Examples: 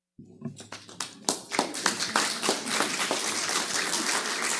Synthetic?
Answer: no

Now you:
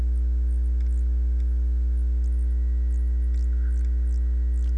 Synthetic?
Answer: no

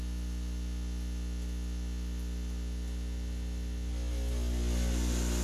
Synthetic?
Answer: no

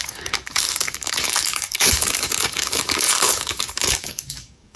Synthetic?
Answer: yes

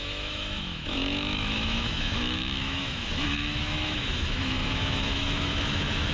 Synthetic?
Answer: yes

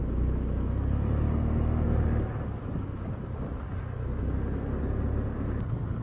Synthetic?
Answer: no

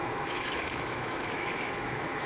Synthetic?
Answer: yes